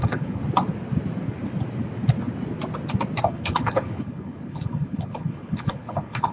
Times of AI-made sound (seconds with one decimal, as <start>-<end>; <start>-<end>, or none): 0.0-0.4; 3.2-6.3